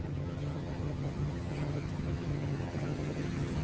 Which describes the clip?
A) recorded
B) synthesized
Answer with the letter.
B